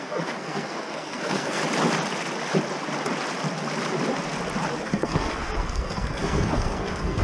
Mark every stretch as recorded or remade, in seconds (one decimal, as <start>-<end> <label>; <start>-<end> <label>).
0.0-1.6 remade; 1.6-4.7 recorded; 4.7-7.2 remade